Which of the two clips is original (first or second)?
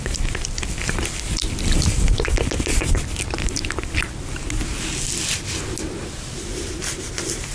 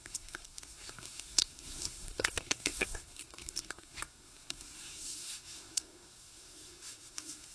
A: first